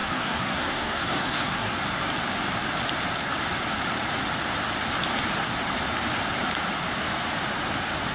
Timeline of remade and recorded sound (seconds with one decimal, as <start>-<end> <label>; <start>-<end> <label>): 0.0-1.7 remade; 1.7-8.1 recorded